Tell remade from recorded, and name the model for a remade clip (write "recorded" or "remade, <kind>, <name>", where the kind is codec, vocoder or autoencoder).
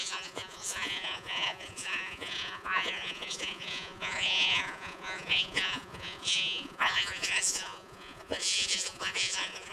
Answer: remade, vocoder, Vocos